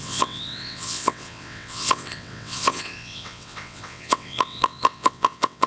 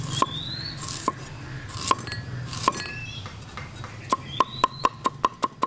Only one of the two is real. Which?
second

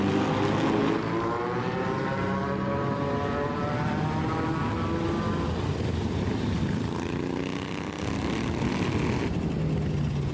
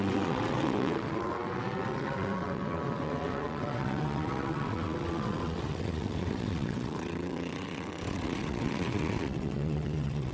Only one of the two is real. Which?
first